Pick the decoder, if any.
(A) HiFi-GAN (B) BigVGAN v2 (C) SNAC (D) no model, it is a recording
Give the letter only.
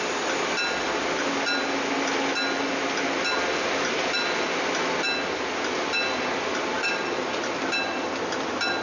D